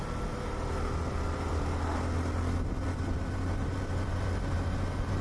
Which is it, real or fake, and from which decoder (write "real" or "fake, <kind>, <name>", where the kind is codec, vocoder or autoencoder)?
real